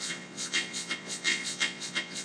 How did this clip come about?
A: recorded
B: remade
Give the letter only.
B